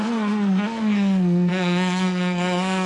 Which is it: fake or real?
fake